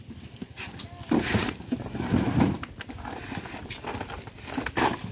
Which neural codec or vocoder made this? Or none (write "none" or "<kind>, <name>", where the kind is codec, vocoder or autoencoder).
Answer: none